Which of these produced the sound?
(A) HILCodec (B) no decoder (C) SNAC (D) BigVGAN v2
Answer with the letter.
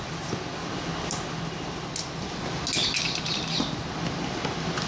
B